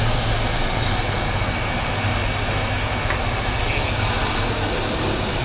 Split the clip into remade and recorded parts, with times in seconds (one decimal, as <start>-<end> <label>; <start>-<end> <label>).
0.0-5.4 recorded